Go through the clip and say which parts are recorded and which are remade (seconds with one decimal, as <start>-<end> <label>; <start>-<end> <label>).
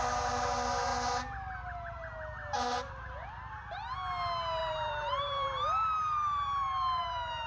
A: 0.0-4.6 recorded; 4.6-7.5 remade